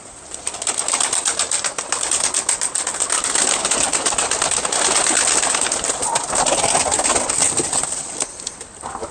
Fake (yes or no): no